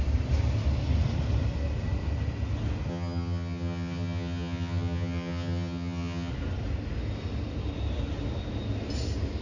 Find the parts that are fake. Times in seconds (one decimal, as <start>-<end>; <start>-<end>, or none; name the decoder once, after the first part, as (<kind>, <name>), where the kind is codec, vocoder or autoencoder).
2.9-6.3 (vocoder, HiFi-GAN)